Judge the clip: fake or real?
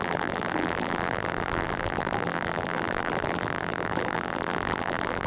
fake